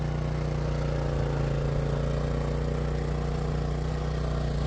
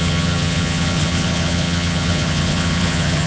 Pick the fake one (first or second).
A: second